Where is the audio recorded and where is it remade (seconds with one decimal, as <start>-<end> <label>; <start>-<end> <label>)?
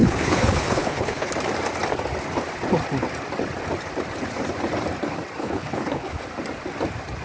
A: 0.0-1.3 remade; 1.3-5.4 recorded; 5.4-6.2 remade; 6.2-7.2 recorded